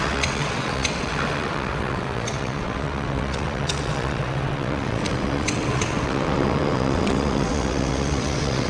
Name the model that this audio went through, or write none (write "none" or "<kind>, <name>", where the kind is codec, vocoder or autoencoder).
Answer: vocoder, WaveNeXt